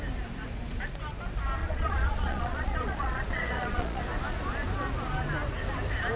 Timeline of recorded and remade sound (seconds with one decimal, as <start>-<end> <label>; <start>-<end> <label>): 0.0-1.6 recorded; 1.6-4.0 remade; 4.0-6.2 recorded